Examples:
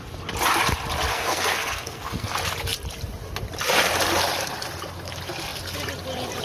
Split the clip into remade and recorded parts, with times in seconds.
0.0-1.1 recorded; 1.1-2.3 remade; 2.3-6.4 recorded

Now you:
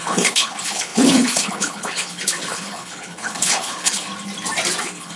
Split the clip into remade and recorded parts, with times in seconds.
0.0-4.1 remade; 4.1-4.8 recorded; 4.8-5.2 remade

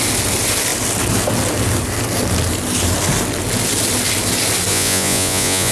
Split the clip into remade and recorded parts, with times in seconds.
0.0-4.7 recorded; 4.7-5.7 remade

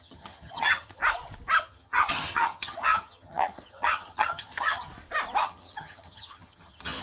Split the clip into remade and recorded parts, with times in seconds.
0.0-1.0 remade; 1.0-1.6 recorded; 1.6-4.9 remade; 4.9-5.4 recorded; 5.4-7.0 remade

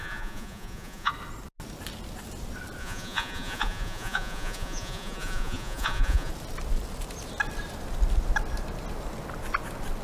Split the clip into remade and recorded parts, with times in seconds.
0.0-1.1 remade; 1.1-2.8 recorded; 2.8-6.3 remade; 6.3-10.0 recorded

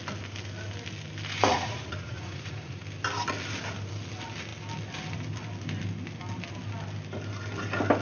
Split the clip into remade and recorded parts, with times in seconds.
0.0-1.5 recorded; 1.5-2.8 remade; 2.8-8.0 recorded

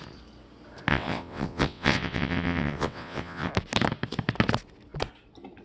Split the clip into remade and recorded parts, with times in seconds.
0.0-0.9 recorded; 0.9-3.5 remade; 3.5-5.6 recorded

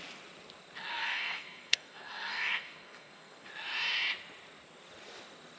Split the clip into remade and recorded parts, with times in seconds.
0.0-0.9 recorded; 0.9-3.5 remade; 3.5-5.6 recorded